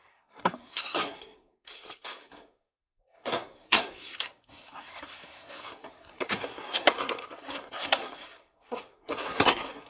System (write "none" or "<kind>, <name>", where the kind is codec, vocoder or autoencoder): codec, SNAC